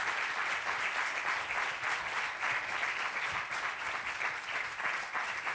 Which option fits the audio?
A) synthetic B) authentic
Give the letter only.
B